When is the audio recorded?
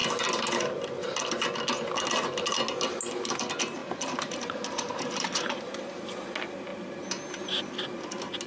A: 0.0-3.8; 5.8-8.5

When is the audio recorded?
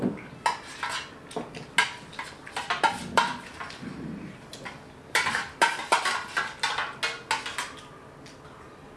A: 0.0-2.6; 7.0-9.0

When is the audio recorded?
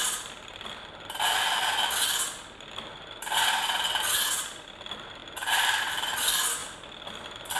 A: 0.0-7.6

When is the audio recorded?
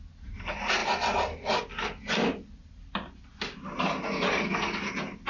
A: 0.0-5.3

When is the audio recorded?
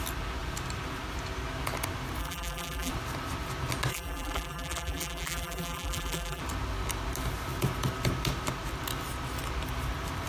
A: 0.0-2.2; 2.9-3.9; 6.4-10.3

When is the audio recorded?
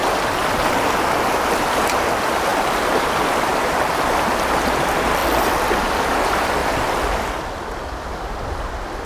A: 0.0-1.2; 6.6-7.4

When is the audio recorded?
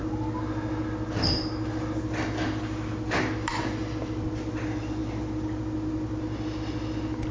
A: 0.0-7.3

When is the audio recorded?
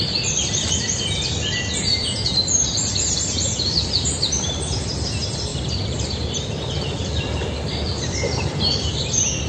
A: 0.0-5.5; 9.0-9.5